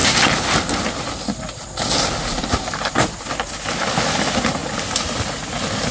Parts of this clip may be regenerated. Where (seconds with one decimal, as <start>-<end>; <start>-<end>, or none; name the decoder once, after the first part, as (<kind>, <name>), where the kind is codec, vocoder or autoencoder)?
none

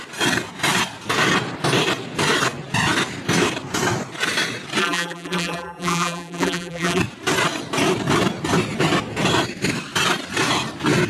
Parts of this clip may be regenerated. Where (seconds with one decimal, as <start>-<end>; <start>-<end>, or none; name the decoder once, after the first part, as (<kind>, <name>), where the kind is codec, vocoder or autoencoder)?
4.8-7.0 (vocoder, BigVGAN v2)

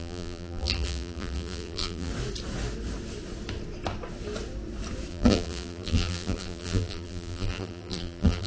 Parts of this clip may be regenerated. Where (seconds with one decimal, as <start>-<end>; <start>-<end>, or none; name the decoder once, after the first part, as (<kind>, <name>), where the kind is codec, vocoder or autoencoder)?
0.0-2.1 (vocoder, BigVGAN v2); 5.1-8.5

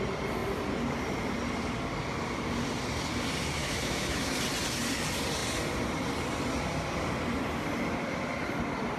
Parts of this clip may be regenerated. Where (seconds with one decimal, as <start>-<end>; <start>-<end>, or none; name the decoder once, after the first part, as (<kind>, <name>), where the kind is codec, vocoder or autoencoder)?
3.6-4.3 (autoencoder, DAC-VAE)